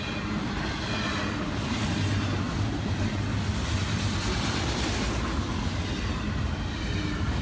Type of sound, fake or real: real